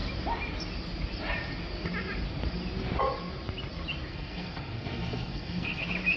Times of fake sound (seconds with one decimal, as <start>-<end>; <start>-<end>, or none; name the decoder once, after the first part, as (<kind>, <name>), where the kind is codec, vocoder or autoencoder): 4.1-5.8 (codec, SNAC)

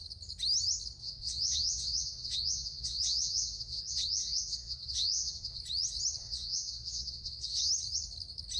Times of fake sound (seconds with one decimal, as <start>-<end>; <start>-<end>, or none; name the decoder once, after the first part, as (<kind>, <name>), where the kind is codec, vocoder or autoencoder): 1.0-5.6 (vocoder, Vocos); 6.2-7.7

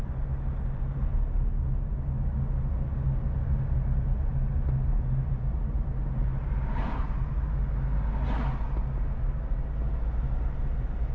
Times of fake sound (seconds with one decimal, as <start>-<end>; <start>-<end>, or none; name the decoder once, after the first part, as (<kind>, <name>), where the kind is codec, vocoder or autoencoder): none